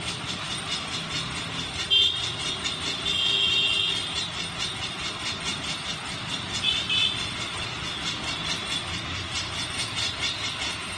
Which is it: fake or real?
real